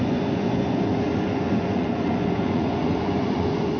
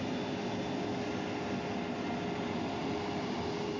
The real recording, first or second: second